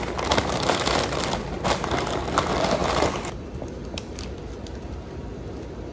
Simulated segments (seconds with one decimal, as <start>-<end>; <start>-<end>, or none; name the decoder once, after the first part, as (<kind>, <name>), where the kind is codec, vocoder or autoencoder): none